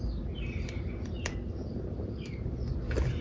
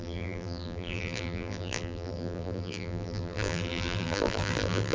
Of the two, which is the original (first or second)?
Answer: first